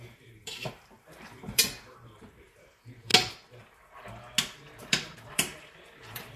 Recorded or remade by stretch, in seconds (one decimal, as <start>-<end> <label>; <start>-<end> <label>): 0.0-3.1 remade; 3.1-4.8 recorded; 4.8-6.4 remade